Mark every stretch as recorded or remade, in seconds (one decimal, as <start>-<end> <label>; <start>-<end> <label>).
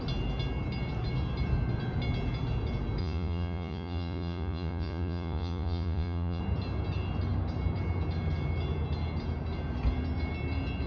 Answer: 0.0-3.0 recorded; 3.0-6.4 remade; 6.4-10.9 recorded